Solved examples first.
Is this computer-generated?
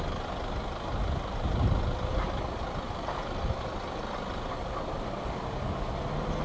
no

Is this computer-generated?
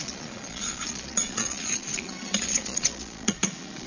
yes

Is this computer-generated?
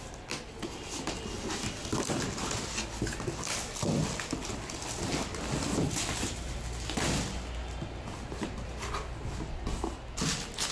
no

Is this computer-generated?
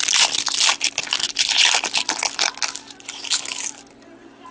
no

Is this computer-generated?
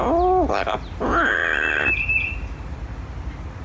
no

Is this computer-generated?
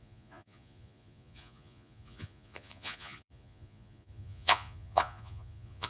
yes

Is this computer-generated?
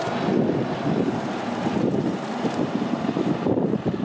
no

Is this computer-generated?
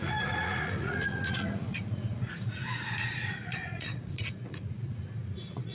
yes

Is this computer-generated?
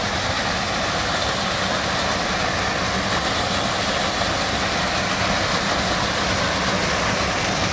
no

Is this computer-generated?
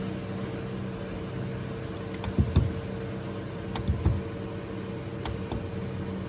no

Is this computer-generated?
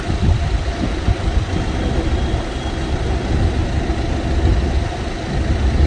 no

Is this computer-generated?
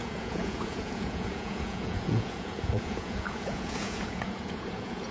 yes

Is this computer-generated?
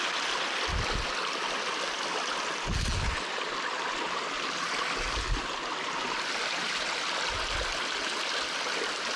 no